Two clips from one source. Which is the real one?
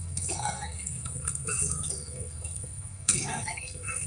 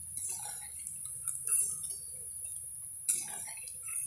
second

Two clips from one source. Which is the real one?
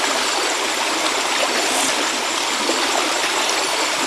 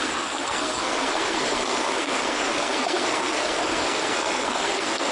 first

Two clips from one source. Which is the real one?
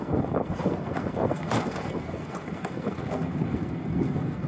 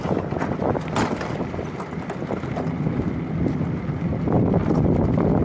second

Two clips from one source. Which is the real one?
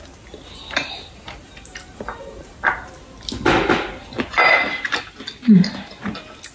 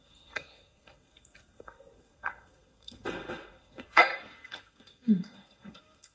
first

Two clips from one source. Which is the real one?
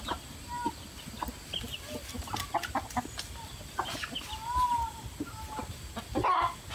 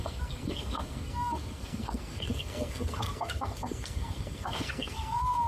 first